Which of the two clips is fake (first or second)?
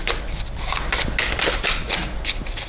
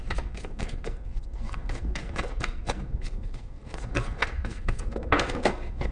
second